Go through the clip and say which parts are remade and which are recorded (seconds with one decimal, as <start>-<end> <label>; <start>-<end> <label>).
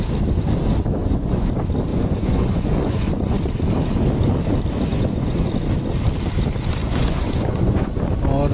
0.0-1.0 recorded; 1.0-1.5 remade; 1.5-1.9 recorded; 1.9-3.5 remade; 3.5-4.9 recorded; 4.9-5.5 remade; 5.5-6.8 recorded; 6.8-8.0 remade; 8.0-8.5 recorded